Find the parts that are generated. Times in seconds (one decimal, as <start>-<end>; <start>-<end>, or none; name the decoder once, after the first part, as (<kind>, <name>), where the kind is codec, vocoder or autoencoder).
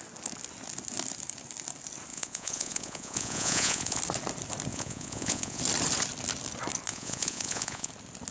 2.1-4.0 (vocoder, Vocos); 4.7-5.6; 6.9-7.9